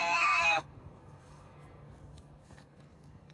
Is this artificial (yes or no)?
yes